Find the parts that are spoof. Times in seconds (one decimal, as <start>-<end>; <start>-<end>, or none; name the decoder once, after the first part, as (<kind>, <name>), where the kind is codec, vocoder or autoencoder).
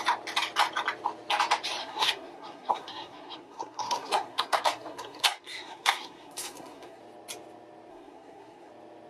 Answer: 1.8-7.0 (codec, SNAC); 7.9-8.7